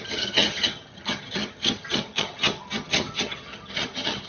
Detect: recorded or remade remade